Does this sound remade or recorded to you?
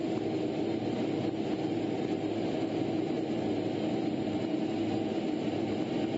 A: recorded